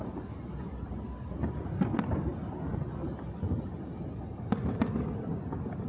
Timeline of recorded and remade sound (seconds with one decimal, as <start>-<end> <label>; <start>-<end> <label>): 0.0-5.9 recorded